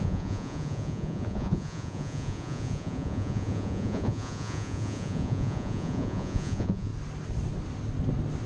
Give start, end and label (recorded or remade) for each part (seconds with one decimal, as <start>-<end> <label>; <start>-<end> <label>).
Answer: 0.0-6.9 remade; 6.9-8.5 recorded